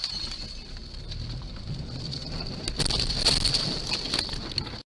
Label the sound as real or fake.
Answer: real